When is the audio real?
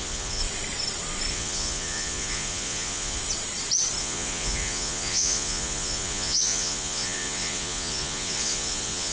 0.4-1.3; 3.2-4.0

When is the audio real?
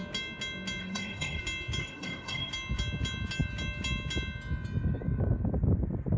0.0-0.8; 1.4-1.8; 2.5-6.2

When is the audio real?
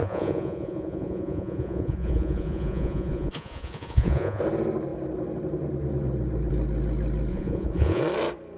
4.4-7.3; 8.0-8.6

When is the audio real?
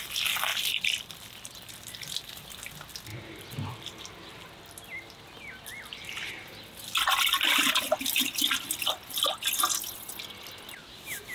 0.0-0.5; 1.7-11.3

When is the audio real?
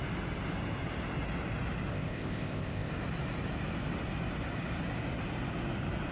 0.0-1.9; 2.9-6.1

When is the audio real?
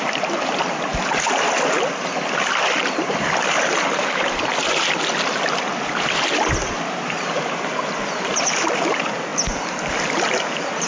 0.0-10.9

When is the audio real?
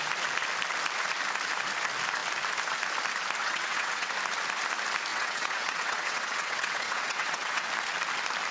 0.0-3.4; 4.1-5.1; 7.7-8.5